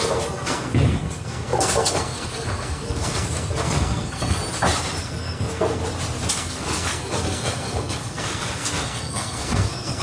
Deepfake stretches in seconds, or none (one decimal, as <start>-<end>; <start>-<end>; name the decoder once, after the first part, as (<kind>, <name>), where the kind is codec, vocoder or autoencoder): 0.0-4.4 (codec, SNAC); 5.0-5.8; 6.3-10.0